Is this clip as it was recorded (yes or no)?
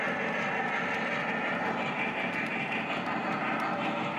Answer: yes